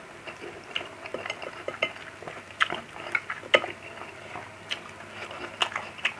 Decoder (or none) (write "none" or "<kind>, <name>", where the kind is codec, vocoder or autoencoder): none